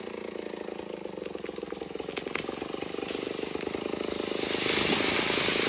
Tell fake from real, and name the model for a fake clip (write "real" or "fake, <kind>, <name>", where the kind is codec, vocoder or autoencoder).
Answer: real